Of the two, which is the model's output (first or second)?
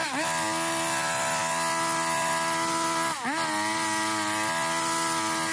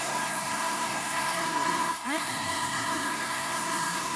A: second